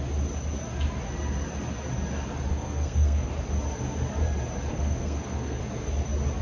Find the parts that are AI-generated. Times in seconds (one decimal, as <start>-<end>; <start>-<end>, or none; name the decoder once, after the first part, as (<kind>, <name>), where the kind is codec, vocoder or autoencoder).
2.5-3.3 (codec, SNAC); 4.7-5.6